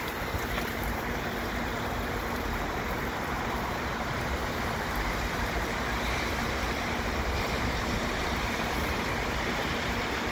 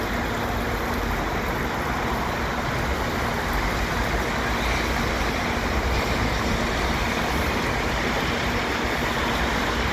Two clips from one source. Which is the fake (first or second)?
first